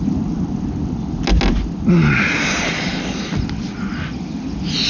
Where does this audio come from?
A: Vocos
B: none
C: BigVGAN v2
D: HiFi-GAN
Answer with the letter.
B